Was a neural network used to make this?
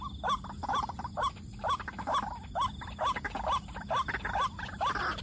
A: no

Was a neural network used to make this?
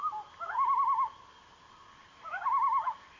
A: no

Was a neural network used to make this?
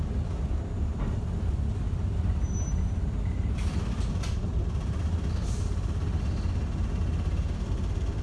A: no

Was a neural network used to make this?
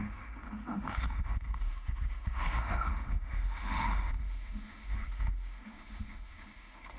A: yes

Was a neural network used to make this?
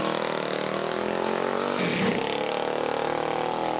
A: no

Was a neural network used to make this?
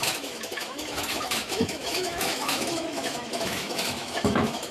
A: yes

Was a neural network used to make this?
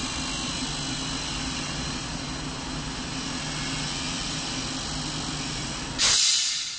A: no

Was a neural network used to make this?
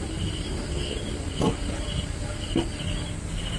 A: no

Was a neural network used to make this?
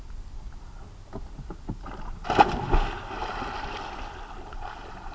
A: no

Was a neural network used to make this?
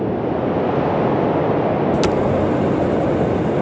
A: no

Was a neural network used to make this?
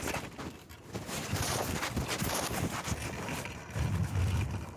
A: yes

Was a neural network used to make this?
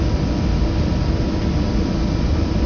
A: no